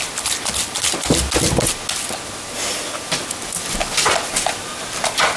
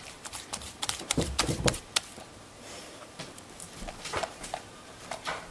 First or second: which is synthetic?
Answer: second